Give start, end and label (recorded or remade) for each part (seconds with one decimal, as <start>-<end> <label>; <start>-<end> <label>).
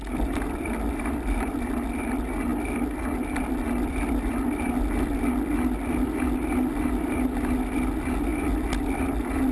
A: 0.0-9.5 recorded